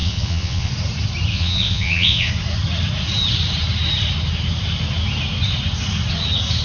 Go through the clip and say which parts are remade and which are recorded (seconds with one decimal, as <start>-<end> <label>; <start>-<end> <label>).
0.0-0.7 remade; 0.7-1.3 recorded; 1.3-2.3 remade; 2.3-6.6 recorded